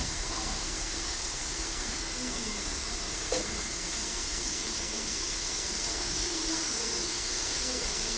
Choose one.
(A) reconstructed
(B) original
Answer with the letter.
A